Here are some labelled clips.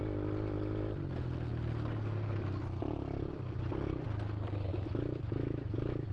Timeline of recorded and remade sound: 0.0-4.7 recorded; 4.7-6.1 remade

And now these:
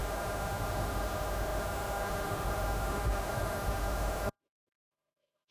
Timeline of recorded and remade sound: 0.0-5.5 remade

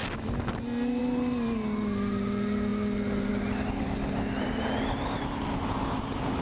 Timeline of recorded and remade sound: 0.0-6.4 recorded

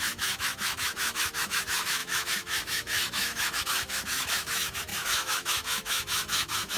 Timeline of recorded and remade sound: 0.0-6.8 remade

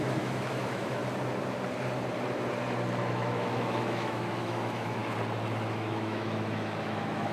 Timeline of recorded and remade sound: 0.0-1.0 remade; 1.0-3.1 recorded; 3.1-5.0 remade; 5.0-5.7 recorded; 5.7-7.3 remade

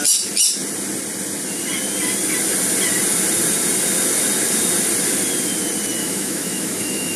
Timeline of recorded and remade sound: 0.0-6.0 recorded; 6.0-7.2 remade

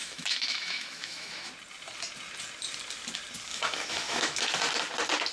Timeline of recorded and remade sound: 0.0-1.5 remade; 1.5-3.5 recorded; 3.5-4.4 remade; 4.4-5.3 recorded